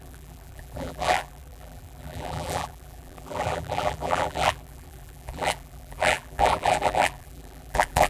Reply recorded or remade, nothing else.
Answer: remade